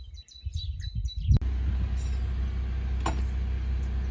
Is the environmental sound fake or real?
real